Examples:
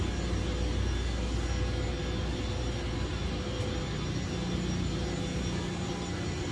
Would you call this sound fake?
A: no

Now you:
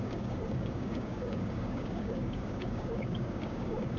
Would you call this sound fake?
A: yes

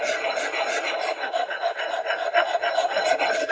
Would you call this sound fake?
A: no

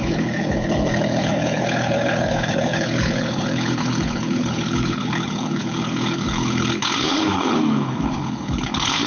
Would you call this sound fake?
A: yes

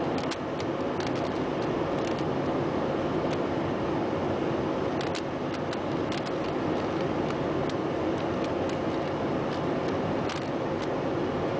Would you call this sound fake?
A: no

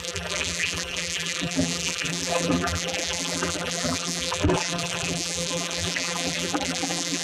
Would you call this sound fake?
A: yes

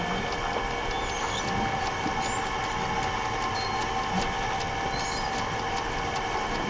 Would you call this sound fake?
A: no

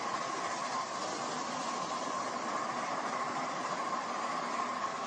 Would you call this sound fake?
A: no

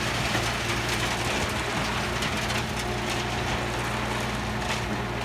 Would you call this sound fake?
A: no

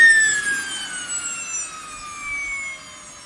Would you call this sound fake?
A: no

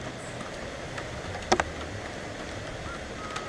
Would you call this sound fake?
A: no